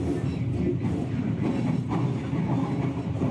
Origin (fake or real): real